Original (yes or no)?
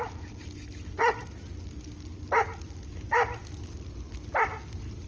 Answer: yes